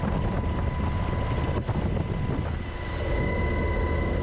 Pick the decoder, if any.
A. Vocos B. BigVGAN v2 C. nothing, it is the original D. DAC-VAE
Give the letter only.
C